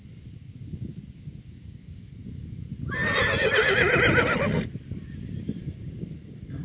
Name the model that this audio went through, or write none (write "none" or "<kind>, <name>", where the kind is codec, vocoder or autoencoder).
none